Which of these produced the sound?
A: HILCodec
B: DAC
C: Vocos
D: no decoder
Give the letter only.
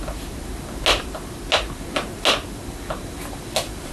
D